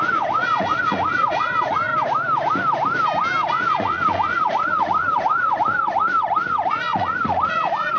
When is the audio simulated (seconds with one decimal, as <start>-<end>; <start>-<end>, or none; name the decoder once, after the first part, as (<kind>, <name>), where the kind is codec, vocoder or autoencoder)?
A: 0.0-1.9 (vocoder, Vocos); 3.5-8.0